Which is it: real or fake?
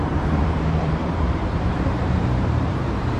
fake